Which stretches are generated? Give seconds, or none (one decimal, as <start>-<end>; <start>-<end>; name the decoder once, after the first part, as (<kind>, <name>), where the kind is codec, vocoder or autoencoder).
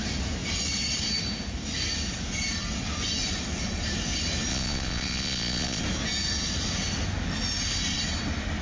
4.5-5.8 (vocoder, Vocos)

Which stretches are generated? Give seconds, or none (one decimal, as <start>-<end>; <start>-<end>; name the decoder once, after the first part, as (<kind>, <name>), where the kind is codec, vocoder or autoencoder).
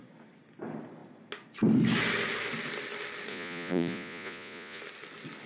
3.3-4.8 (vocoder, Vocos)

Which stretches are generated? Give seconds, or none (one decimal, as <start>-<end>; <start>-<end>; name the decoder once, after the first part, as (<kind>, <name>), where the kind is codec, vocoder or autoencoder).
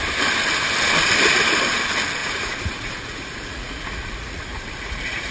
2.2-5.3 (vocoder, Vocos)